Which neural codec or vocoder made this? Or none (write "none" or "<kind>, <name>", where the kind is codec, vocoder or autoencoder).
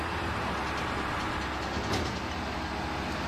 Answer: none